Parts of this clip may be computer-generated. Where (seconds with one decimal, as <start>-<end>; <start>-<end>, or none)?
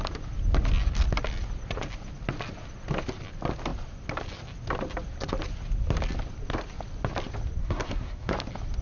7.6-8.3